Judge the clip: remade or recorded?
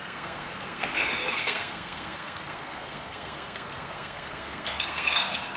remade